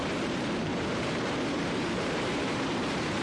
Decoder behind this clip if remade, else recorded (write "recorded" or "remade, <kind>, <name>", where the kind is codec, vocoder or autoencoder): remade, vocoder, BigVGAN v2